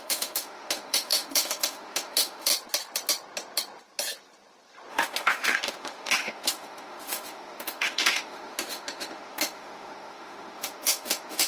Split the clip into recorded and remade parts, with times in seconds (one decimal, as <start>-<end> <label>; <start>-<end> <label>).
0.0-2.5 remade; 2.5-4.9 recorded; 4.9-11.5 remade